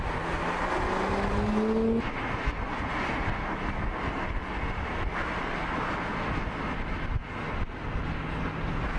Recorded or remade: recorded